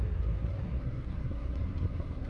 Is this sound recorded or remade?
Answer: remade